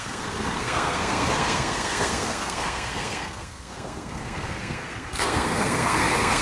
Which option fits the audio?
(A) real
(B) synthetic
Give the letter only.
B